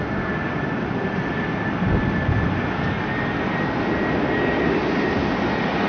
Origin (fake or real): real